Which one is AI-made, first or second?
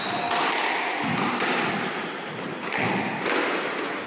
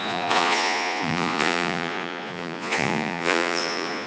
second